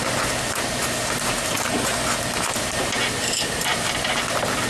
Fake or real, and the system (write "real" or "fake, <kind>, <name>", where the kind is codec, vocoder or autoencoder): real